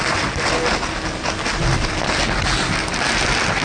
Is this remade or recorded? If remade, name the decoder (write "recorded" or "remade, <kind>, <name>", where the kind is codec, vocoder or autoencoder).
recorded